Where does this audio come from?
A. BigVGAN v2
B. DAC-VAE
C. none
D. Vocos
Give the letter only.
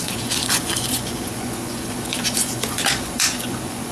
D